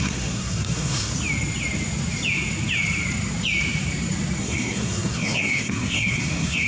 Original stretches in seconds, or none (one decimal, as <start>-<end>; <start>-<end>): 1.1-4.4